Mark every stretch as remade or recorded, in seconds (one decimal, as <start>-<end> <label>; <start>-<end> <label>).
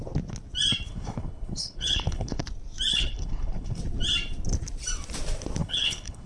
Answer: 0.0-0.9 recorded; 0.9-2.4 remade; 2.4-2.9 recorded; 2.9-3.8 remade; 3.8-5.6 recorded; 5.6-6.3 remade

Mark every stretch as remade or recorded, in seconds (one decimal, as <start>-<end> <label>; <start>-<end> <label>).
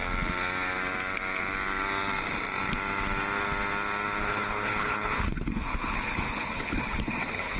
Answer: 0.0-4.2 recorded; 4.2-7.6 remade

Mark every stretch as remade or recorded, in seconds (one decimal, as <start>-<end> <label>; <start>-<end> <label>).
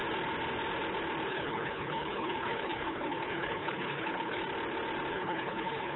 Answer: 0.0-1.3 recorded; 1.3-4.4 remade; 4.4-5.1 recorded; 5.1-6.0 remade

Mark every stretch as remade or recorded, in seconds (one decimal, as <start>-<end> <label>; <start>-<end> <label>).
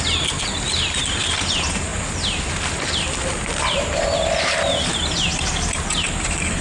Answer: 0.0-6.6 recorded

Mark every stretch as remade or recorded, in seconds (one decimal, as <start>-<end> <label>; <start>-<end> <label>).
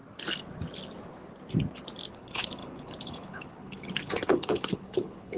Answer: 0.0-2.1 recorded; 2.1-5.4 remade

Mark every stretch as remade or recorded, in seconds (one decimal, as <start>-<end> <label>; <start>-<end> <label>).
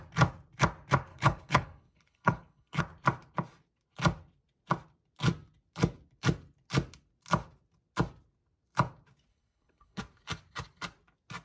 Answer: 0.0-1.1 recorded; 1.1-2.8 remade; 2.8-9.3 recorded; 9.3-10.0 remade; 10.0-11.4 recorded